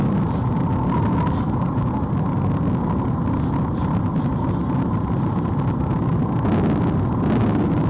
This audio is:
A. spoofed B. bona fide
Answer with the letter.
B